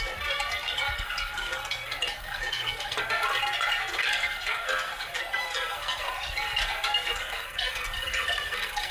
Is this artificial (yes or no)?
yes